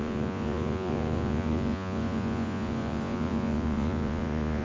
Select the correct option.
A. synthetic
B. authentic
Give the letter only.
A